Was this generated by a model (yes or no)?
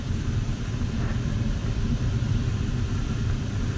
yes